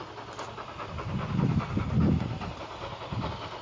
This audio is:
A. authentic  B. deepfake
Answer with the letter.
A